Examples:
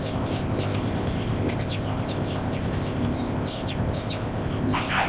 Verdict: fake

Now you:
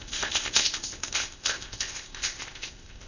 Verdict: fake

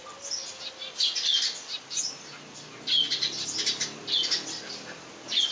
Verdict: real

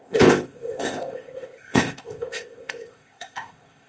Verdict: fake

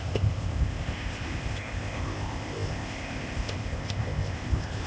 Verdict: fake